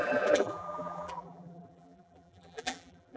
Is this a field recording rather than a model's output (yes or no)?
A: no